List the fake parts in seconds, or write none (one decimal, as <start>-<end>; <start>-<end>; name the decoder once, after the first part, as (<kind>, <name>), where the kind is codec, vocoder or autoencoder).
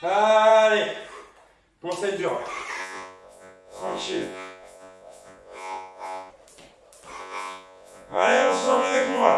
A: 2.8-6.3 (vocoder, Vocos); 7.2-9.4